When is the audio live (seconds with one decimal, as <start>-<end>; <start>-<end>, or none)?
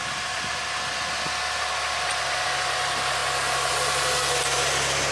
0.0-5.1